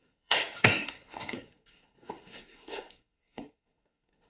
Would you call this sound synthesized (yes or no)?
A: yes